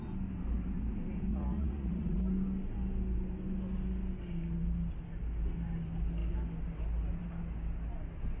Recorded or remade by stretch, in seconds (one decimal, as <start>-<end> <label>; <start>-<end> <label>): 0.0-1.3 recorded; 1.3-2.2 remade; 2.2-8.4 recorded